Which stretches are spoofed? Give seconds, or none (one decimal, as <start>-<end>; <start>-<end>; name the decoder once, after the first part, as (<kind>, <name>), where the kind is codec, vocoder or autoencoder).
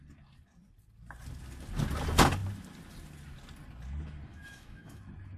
4.3-5.0 (autoencoder, DAC-VAE)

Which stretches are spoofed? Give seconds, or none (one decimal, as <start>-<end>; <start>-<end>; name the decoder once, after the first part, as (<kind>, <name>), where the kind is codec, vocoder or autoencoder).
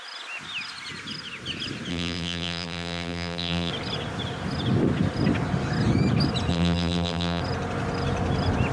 1.9-3.7 (vocoder, BigVGAN v2); 6.5-7.4